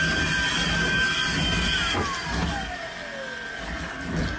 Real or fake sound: real